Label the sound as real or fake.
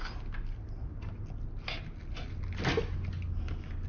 real